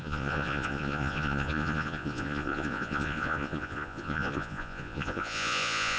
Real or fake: fake